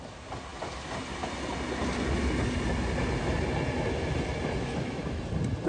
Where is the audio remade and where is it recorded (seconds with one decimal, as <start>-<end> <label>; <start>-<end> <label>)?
0.0-4.6 recorded; 4.6-5.2 remade; 5.2-5.7 recorded